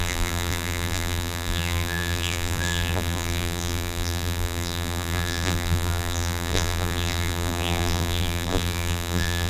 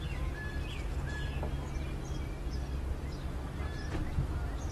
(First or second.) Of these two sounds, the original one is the second